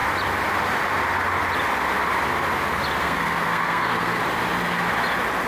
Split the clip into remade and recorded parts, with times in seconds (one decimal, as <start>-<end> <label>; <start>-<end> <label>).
0.0-3.0 recorded; 3.0-4.2 remade; 4.2-5.5 recorded